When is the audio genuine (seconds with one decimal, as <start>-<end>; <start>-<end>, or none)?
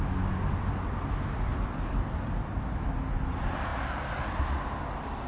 0.0-5.3